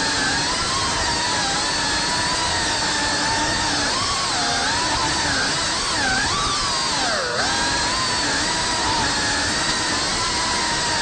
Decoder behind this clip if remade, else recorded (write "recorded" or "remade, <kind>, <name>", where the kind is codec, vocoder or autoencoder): recorded